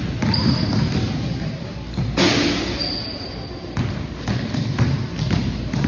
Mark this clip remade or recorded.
recorded